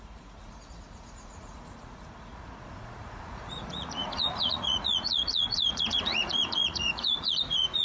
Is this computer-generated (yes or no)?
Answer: yes